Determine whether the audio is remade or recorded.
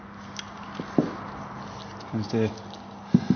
recorded